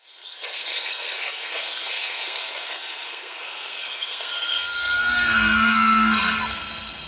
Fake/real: fake